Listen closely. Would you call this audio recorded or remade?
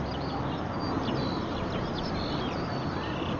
recorded